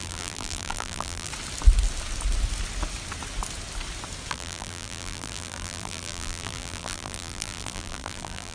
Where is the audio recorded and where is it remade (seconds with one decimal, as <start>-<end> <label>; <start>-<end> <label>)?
0.0-1.3 remade; 1.3-4.3 recorded; 4.3-8.5 remade